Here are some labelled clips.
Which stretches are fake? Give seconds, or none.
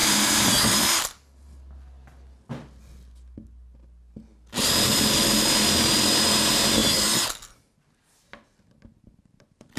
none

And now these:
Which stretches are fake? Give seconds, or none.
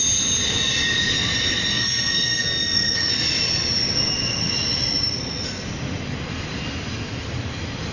1.7-3.1 (codec, SNAC)